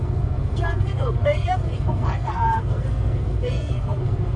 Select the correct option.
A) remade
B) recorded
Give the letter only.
A